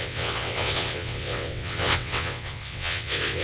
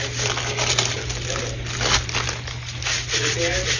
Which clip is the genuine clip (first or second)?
second